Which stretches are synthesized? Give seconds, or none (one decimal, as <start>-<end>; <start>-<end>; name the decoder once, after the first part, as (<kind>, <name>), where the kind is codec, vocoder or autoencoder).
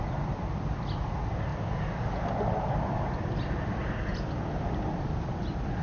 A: none